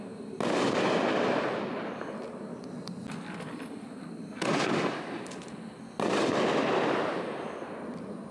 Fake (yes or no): no